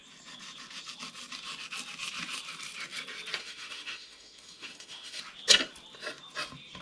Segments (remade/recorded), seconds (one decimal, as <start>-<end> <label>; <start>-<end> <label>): 0.0-3.4 recorded; 3.4-5.2 remade; 5.2-6.8 recorded